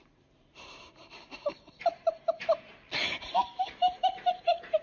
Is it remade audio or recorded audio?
remade